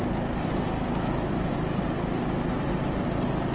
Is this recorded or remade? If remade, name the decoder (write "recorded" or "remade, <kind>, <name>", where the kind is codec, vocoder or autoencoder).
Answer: recorded